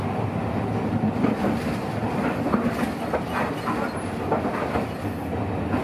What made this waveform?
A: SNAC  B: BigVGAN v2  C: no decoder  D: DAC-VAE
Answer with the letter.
C